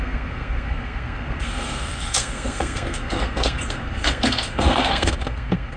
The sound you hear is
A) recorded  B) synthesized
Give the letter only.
B